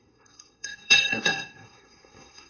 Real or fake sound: fake